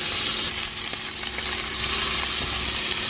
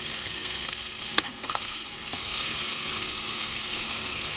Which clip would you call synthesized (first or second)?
second